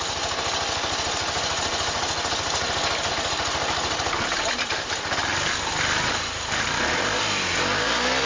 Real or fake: real